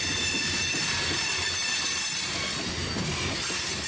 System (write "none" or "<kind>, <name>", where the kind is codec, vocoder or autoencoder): none